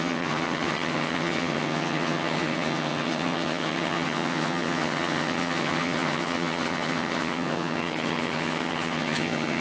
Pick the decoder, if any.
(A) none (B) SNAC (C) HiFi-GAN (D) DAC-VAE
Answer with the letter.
C